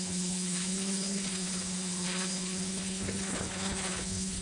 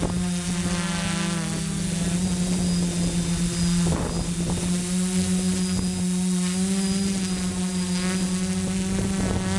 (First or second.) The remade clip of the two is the first